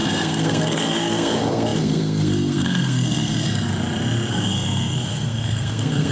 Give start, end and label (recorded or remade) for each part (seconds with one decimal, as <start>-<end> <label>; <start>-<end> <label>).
0.0-3.7 remade; 3.7-4.3 recorded; 4.3-6.1 remade